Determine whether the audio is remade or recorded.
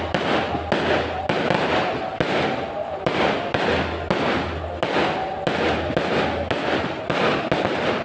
recorded